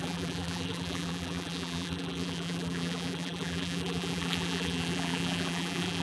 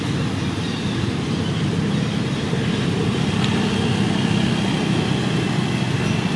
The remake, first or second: first